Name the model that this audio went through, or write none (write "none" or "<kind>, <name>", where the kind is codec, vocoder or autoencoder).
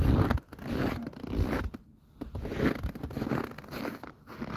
none